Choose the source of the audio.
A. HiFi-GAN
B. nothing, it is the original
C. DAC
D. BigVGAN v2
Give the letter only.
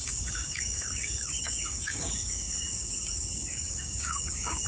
C